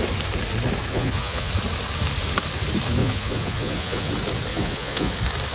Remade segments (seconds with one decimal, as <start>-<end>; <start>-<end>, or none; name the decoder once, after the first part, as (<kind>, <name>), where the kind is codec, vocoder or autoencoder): 0.9-1.5 (vocoder, Vocos); 3.0-4.1; 4.5-5.1